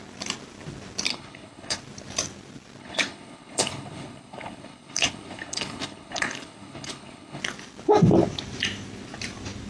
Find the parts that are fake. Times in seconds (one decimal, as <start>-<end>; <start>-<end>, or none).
1.1-1.8; 2.8-7.4